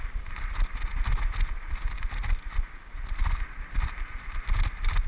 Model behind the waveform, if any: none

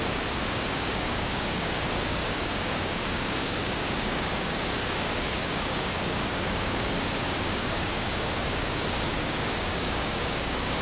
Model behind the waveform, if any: codec, DAC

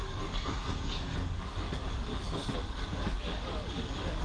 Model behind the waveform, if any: codec, DAC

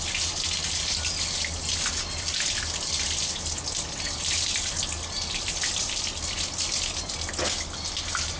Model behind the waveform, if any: none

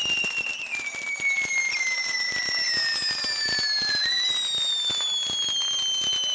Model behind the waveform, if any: none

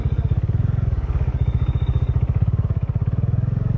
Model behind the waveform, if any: codec, DAC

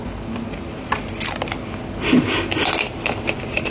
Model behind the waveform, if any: none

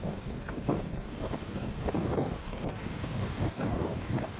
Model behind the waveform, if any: codec, DAC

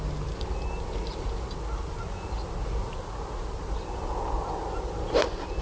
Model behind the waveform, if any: none